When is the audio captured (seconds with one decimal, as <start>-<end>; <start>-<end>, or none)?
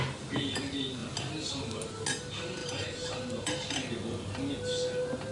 0.0-2.6; 3.9-5.3